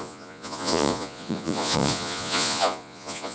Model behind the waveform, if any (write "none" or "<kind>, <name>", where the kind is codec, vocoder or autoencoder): vocoder, Vocos